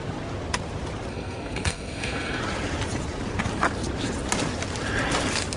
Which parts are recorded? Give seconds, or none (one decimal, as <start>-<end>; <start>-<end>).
0.0-1.1; 2.4-5.6